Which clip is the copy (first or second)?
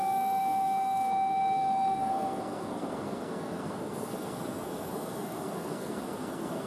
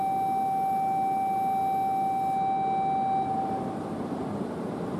first